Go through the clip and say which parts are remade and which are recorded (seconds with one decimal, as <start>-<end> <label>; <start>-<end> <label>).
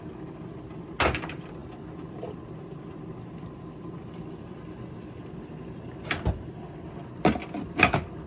0.0-8.3 recorded